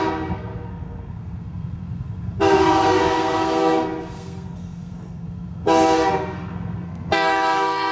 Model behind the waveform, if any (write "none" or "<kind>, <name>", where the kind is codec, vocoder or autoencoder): codec, SNAC